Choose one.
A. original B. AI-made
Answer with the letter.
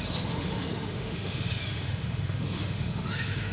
B